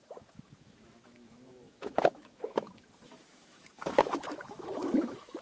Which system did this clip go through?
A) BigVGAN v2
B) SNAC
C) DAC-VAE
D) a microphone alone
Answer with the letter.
C